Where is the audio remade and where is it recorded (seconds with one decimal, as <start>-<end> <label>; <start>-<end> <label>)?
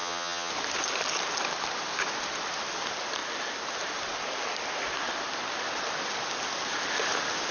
0.0-0.5 remade; 0.5-7.5 recorded